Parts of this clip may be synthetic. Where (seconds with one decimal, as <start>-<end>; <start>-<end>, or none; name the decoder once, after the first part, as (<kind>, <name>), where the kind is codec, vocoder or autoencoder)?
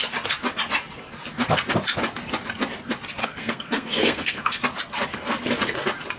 3.2-4.6 (codec, SNAC)